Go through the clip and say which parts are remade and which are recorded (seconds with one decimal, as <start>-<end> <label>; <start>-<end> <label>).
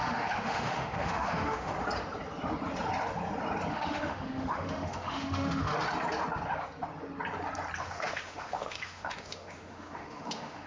0.0-1.7 remade; 1.7-3.7 recorded; 3.7-5.7 remade; 5.7-7.8 recorded; 7.8-10.7 remade